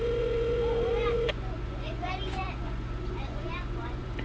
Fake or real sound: fake